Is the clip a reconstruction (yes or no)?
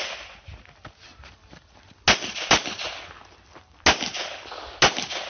no